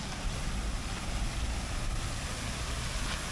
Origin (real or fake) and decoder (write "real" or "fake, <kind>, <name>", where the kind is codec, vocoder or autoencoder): real